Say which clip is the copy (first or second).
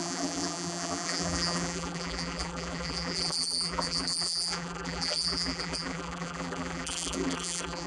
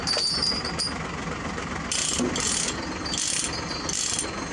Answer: first